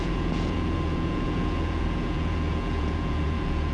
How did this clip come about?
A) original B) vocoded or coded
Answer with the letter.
B